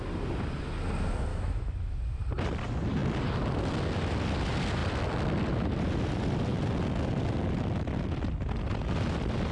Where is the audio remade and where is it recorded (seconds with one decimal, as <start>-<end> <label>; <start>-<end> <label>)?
0.0-1.3 recorded; 1.3-2.0 remade; 2.0-9.5 recorded